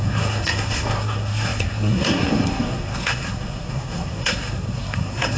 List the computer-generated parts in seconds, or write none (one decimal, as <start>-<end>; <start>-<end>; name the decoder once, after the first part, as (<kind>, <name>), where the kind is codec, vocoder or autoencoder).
0.0-5.4 (codec, SNAC)